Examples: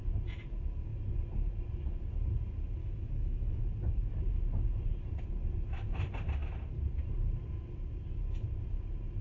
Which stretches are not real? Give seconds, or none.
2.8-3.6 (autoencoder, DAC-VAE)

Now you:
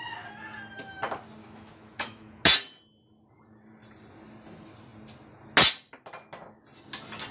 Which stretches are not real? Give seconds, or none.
1.4-2.4 (autoencoder, DAC-VAE)

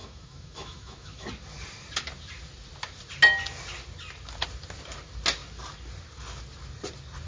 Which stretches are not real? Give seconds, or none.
0.0-1.3 (autoencoder, DAC-VAE)

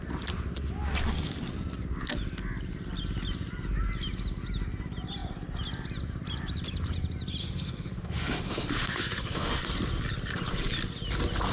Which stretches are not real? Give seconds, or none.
7.4-9.6 (autoencoder, DAC-VAE)

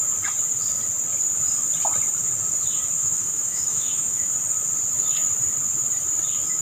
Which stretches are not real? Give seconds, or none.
3.0-4.3 (autoencoder, DAC-VAE)